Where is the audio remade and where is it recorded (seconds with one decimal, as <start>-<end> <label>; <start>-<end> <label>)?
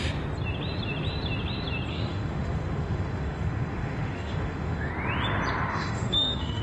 0.0-1.9 recorded; 1.9-4.9 remade; 4.9-5.7 recorded; 5.7-6.6 remade